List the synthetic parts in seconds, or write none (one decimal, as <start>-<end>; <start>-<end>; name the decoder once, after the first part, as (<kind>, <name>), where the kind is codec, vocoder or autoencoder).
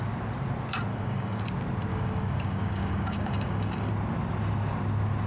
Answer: 0.9-1.4 (codec, DAC); 1.9-3.9